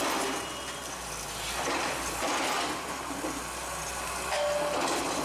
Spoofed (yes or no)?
no